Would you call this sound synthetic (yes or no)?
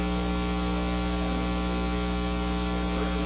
no